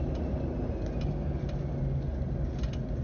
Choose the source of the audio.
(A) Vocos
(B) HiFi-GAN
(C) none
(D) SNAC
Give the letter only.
C